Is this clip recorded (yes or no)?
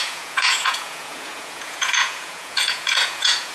no